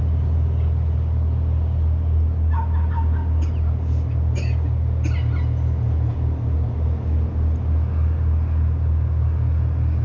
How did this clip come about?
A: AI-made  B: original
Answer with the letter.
B